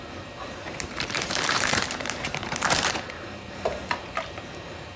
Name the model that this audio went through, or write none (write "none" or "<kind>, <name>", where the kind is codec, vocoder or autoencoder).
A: vocoder, BigVGAN v2